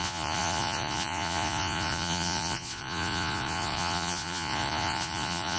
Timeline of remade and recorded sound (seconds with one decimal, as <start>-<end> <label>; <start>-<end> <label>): 0.0-5.6 remade